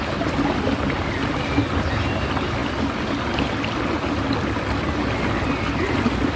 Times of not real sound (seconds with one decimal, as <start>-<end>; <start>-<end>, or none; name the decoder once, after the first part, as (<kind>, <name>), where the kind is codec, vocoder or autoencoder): none

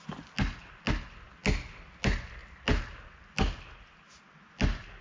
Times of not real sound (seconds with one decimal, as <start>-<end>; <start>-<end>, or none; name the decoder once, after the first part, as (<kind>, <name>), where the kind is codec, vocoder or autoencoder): none

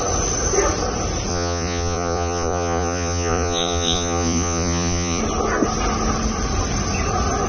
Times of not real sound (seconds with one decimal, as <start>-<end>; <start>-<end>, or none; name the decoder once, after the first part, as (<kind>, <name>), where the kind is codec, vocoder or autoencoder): 1.3-5.2 (vocoder, Vocos)

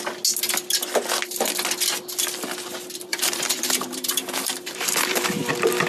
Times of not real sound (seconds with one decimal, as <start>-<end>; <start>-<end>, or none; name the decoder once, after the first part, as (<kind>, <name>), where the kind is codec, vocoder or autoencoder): 3.1-5.5 (vocoder, BigVGAN v2)

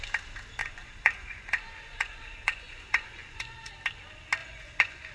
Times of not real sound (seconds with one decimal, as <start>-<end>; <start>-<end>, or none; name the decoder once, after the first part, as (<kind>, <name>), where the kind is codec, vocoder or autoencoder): 0.6-3.7 (vocoder, Vocos); 4.4-5.1